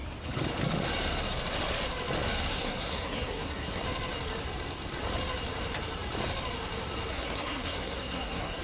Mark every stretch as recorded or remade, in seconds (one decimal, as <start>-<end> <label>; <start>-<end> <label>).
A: 0.0-2.5 recorded; 2.5-3.8 remade; 3.8-7.1 recorded; 7.1-8.6 remade